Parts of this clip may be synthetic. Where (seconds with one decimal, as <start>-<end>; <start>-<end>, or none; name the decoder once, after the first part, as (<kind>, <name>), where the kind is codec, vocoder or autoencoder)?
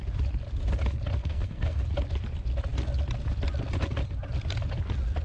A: 1.2-1.8 (codec, SNAC)